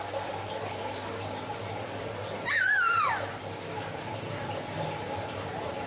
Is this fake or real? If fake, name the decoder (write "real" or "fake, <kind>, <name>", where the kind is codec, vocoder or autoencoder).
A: real